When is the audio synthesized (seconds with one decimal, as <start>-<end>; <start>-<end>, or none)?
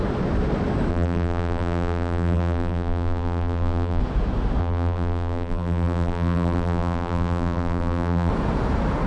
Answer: 0.9-4.0; 4.6-8.3